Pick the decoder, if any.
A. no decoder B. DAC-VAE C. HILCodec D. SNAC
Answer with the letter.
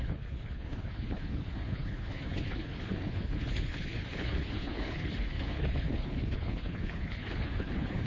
C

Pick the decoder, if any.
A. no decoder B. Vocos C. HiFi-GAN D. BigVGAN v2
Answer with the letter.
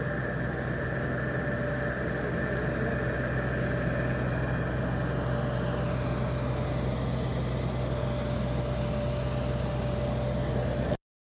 A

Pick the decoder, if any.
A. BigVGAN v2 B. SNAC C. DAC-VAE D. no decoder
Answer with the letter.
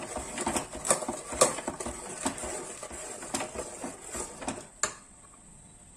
D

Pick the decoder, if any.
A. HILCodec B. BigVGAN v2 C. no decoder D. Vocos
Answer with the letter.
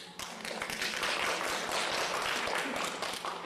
C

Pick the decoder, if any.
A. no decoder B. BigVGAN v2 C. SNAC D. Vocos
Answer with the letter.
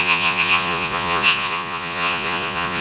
D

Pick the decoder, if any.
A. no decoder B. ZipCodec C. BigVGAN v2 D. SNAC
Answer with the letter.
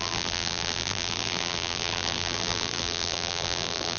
C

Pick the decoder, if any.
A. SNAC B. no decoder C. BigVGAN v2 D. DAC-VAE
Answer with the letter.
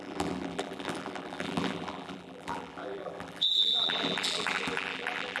C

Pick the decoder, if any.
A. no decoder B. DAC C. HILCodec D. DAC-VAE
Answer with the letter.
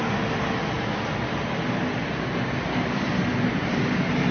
A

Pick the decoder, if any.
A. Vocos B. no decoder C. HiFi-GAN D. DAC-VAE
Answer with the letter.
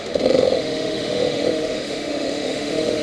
D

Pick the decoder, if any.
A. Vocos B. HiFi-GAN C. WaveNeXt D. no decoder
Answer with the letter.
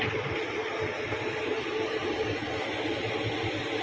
D